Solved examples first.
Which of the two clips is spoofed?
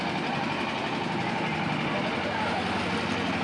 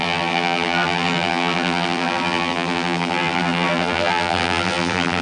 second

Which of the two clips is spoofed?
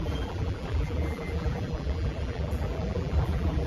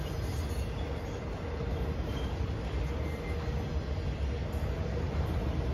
first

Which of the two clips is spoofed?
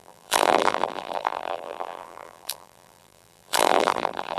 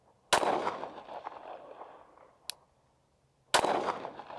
first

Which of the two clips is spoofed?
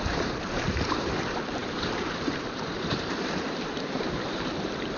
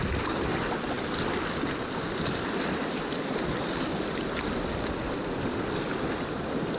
first